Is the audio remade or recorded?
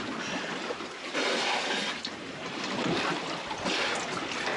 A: recorded